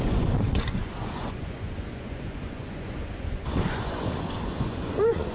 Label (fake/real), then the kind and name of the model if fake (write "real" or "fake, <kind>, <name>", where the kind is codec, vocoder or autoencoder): fake, vocoder, Vocos